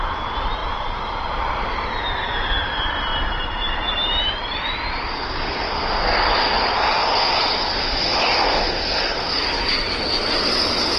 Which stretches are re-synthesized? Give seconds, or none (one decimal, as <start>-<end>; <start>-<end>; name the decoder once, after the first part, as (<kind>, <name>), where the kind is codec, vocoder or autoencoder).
3.1-4.6 (vocoder, BigVGAN v2)